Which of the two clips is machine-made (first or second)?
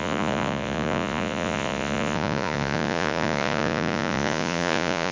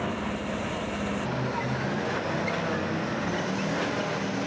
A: first